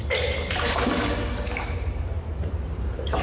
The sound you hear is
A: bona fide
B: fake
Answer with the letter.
B